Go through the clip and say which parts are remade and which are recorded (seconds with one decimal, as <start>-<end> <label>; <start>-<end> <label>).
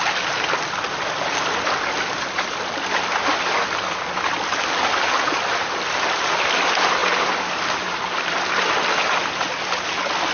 0.0-10.3 recorded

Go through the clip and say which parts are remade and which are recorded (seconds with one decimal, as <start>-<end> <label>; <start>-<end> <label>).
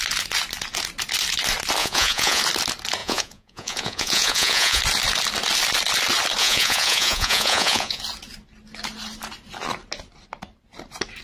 0.0-1.8 recorded; 1.8-2.4 remade; 2.4-3.0 recorded; 3.0-4.8 remade; 4.8-6.4 recorded; 6.4-8.0 remade; 8.0-11.2 recorded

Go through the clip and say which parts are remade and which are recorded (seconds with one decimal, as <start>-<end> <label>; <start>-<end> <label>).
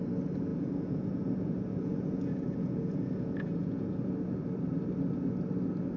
0.0-0.5 recorded; 0.5-4.1 remade; 4.1-6.0 recorded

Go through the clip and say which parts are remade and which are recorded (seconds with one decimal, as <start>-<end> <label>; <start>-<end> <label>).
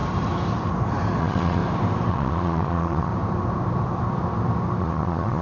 0.0-1.2 recorded; 1.2-1.6 remade; 1.6-2.1 recorded; 2.1-3.1 remade; 3.1-4.8 recorded; 4.8-5.4 remade